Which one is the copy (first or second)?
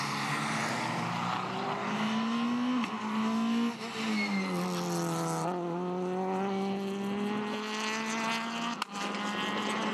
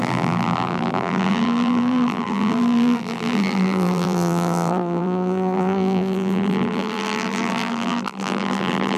second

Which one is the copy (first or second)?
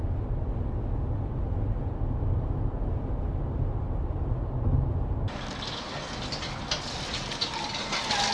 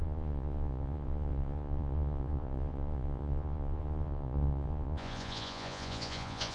second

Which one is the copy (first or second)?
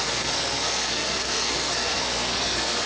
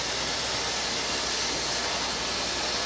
first